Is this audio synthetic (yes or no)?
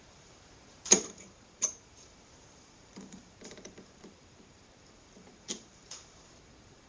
yes